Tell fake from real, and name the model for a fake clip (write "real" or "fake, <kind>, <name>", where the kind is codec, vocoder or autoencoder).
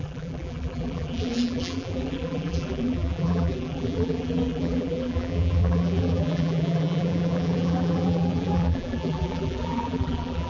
fake, vocoder, BigVGAN v2